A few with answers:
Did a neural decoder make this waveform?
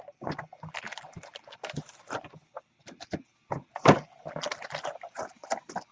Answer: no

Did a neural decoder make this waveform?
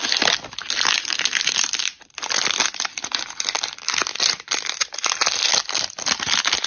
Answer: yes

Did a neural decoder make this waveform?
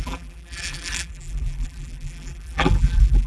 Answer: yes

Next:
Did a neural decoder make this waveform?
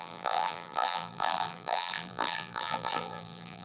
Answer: yes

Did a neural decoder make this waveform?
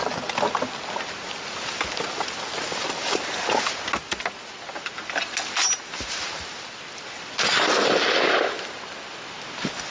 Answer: no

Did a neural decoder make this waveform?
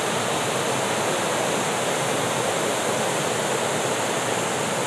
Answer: no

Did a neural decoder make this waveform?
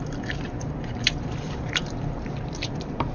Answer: yes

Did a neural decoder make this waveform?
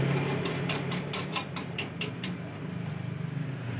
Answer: yes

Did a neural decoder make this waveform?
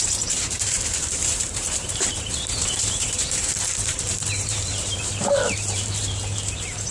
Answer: yes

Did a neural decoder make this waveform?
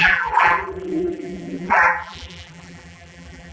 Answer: yes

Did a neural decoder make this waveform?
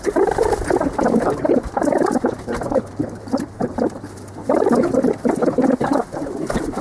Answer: yes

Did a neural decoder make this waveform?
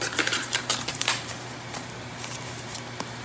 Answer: yes